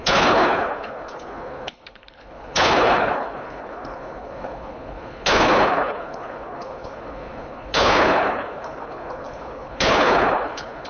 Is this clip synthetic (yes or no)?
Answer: yes